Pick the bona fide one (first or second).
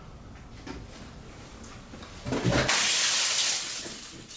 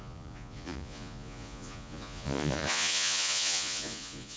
first